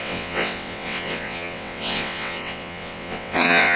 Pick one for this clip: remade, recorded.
remade